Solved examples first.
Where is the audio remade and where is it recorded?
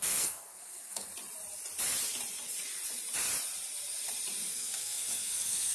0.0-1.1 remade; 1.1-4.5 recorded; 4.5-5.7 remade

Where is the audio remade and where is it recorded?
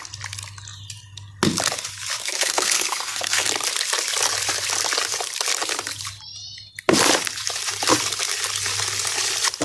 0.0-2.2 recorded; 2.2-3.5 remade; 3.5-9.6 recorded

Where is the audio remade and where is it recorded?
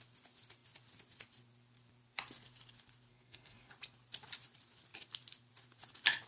0.0-3.1 recorded; 3.1-3.7 remade; 3.7-6.3 recorded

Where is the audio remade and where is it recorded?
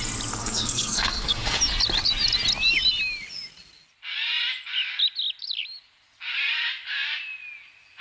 0.0-0.4 recorded; 0.4-1.6 remade; 1.6-8.0 recorded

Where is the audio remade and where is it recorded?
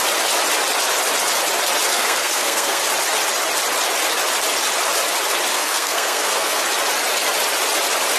0.0-1.9 recorded; 1.9-2.8 remade; 2.8-5.5 recorded; 5.5-6.6 remade; 6.6-8.2 recorded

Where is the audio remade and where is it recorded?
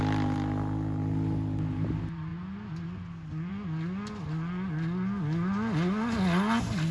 0.0-6.9 recorded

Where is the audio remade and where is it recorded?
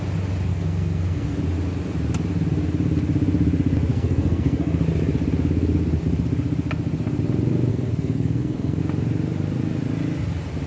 0.0-0.5 recorded; 0.5-1.4 remade; 1.4-3.9 recorded; 3.9-4.8 remade; 4.8-7.7 recorded; 7.7-8.8 remade; 8.8-10.7 recorded